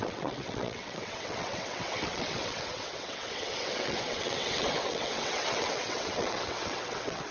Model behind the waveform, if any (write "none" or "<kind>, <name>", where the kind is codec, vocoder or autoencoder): vocoder, WaveNeXt